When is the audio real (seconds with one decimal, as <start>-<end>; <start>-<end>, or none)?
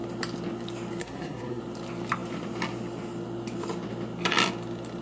0.0-1.0; 1.6-5.0